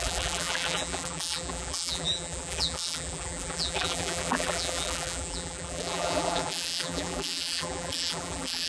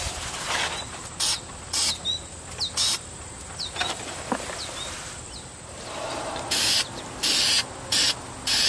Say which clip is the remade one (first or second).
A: first